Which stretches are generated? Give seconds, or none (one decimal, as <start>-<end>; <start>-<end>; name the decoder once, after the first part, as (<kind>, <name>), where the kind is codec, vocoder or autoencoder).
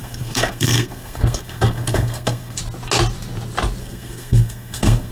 0.0-2.6 (codec, SNAC); 3.8-5.1